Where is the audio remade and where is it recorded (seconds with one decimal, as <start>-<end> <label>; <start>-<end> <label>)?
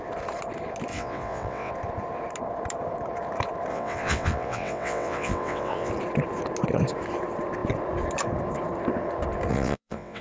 0.0-0.9 recorded; 0.9-1.7 remade; 1.7-3.7 recorded; 3.7-5.9 remade; 5.9-9.5 recorded; 9.5-10.2 remade